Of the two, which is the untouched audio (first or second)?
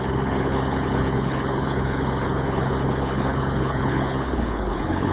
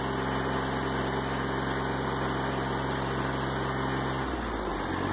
second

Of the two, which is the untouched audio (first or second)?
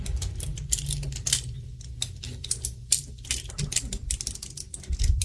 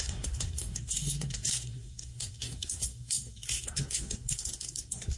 first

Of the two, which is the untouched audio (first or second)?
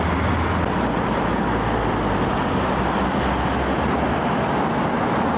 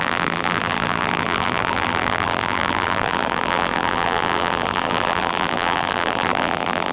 first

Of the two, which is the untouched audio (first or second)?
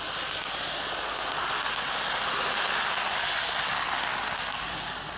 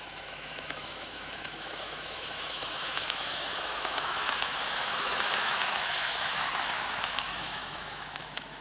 first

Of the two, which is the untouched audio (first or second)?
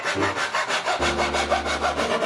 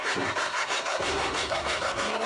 first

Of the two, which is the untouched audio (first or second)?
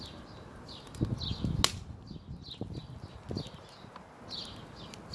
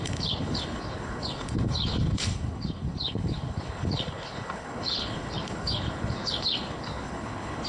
first